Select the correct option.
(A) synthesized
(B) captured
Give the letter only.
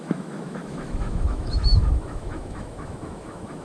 A